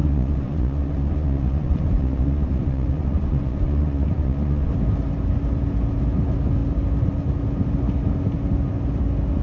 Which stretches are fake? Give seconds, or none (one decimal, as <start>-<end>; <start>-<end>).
0.0-4.7